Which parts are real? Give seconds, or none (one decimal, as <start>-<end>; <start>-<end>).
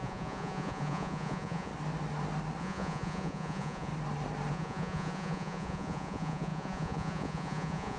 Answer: 1.7-2.6; 3.9-4.5